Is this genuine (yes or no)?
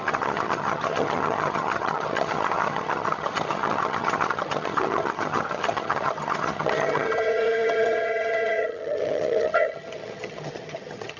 no